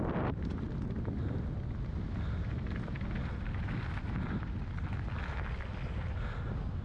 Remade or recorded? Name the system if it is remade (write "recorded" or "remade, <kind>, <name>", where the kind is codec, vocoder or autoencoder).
recorded